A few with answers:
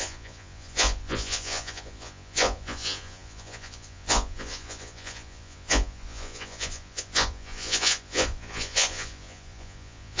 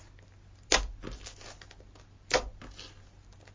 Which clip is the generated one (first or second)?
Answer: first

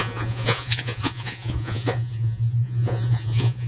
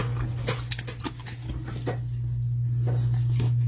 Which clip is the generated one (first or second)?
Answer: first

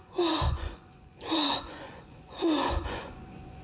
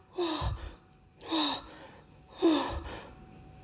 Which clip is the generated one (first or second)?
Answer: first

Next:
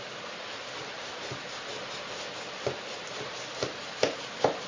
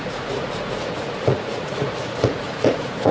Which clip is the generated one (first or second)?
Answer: second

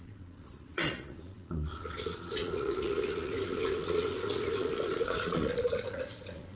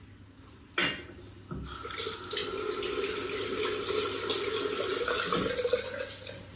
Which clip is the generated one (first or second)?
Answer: first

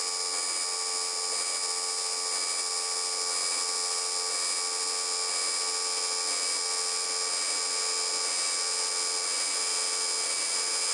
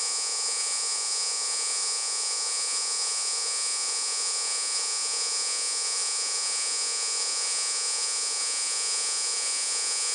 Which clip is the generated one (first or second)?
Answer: second